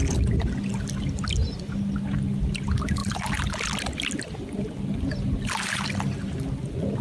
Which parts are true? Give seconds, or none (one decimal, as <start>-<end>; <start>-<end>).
0.0-7.0